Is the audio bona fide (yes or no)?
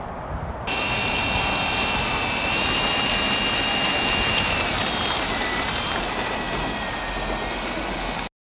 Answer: yes